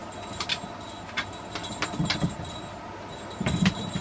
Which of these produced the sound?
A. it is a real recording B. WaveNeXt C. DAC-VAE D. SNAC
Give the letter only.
A